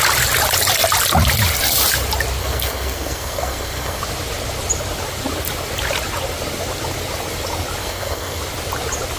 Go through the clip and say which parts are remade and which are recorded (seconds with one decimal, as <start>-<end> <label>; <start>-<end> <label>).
0.0-2.4 recorded; 2.4-4.0 remade; 4.0-7.8 recorded; 7.8-8.4 remade; 8.4-9.2 recorded